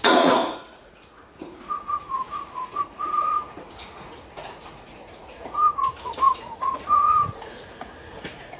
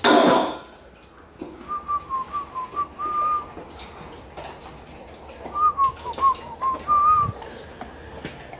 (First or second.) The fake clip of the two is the first